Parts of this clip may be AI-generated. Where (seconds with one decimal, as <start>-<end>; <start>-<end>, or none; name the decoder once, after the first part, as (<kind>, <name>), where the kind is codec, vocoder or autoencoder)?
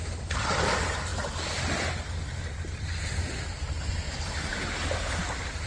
none